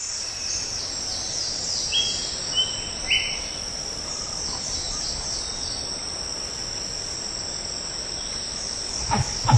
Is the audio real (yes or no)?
yes